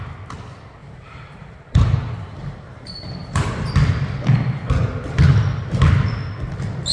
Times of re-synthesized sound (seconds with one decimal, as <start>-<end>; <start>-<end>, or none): 0.8-3.7